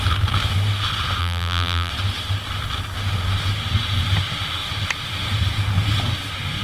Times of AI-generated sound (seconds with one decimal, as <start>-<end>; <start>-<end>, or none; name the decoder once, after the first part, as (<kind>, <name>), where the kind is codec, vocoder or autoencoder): 1.2-1.9 (vocoder, BigVGAN v2)